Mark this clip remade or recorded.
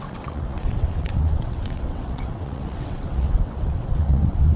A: remade